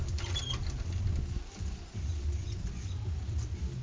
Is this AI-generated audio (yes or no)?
no